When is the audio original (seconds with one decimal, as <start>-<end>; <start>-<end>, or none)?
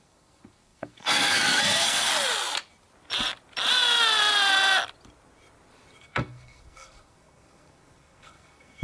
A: 2.1-6.0